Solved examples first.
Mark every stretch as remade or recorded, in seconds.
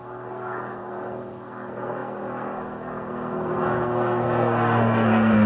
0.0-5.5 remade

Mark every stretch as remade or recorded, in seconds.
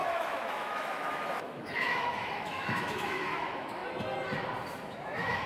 0.0-3.8 remade; 3.8-4.8 recorded; 4.8-5.5 remade